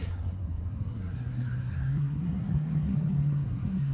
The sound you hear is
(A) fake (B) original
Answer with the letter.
A